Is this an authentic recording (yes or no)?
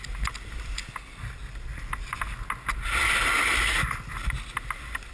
yes